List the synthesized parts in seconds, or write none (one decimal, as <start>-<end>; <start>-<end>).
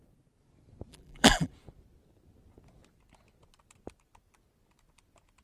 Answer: 0.9-1.5